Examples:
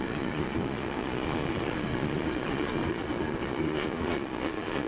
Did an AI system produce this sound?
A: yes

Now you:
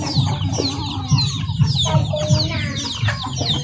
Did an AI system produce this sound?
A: no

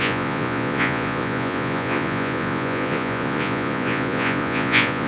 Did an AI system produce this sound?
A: yes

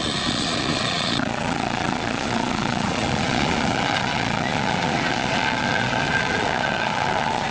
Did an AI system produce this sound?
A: yes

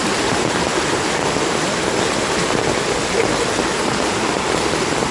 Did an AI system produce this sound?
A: no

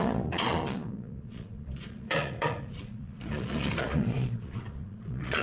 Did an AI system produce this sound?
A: yes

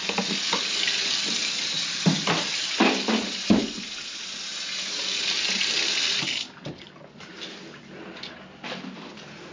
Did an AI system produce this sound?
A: no